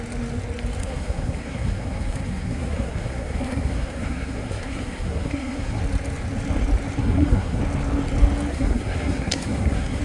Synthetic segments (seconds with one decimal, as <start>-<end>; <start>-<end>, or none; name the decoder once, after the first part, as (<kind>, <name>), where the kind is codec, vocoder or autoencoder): 0.8-5.8 (codec, SNAC); 7.0-7.6; 8.5-10.0